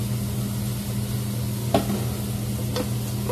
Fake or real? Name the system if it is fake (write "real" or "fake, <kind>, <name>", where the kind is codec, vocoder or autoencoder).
real